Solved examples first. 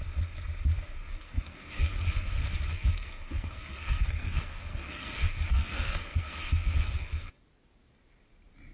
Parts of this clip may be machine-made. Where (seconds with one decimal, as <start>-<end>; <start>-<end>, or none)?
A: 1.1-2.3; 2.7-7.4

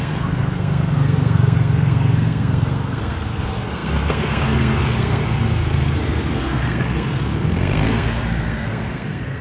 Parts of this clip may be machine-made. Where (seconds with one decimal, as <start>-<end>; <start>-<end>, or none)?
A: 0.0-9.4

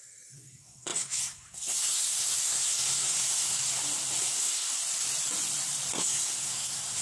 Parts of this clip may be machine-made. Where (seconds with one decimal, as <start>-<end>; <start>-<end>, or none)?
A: 0.0-3.7; 4.2-4.7; 5.9-7.0

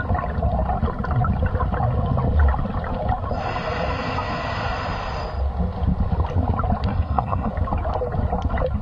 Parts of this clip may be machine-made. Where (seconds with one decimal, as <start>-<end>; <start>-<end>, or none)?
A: 6.9-7.5

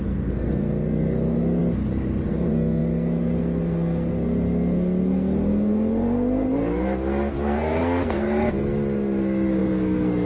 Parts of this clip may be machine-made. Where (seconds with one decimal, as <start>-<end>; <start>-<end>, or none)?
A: 0.0-1.6; 2.3-10.3

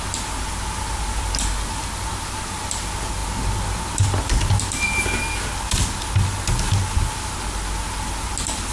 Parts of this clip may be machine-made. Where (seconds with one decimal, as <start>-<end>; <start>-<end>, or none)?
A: none

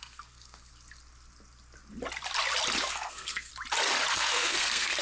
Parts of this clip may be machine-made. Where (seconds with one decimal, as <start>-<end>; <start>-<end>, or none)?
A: 0.0-0.7; 2.8-3.5; 4.1-5.0